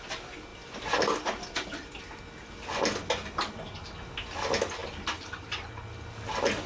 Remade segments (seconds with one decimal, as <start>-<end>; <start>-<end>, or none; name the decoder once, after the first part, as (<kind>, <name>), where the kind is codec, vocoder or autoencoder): 4.8-5.7 (vocoder, BigVGAN v2)